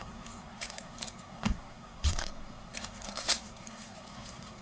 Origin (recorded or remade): remade